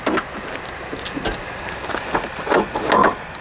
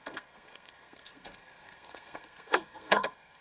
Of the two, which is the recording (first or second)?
first